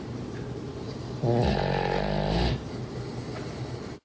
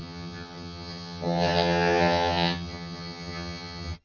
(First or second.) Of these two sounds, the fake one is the second